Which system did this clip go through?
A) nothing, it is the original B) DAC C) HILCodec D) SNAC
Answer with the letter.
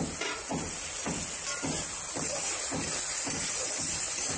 A